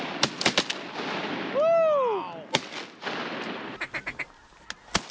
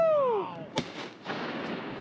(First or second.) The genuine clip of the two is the first